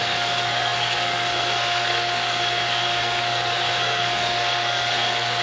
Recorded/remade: remade